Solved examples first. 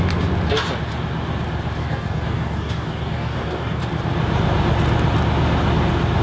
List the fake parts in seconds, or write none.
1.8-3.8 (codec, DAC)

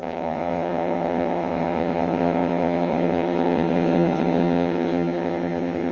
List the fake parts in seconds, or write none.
0.0-5.9 (vocoder, HiFi-GAN)

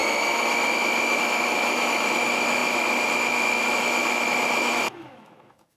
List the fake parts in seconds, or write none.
0.0-5.8 (autoencoder, DAC-VAE)

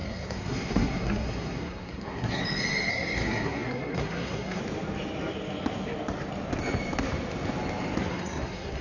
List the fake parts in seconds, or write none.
0.0-2.4 (codec, SNAC); 2.9-4.6; 8.1-8.8